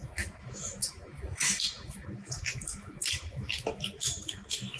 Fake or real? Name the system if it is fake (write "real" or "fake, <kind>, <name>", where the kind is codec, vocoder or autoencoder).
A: fake, autoencoder, DAC-VAE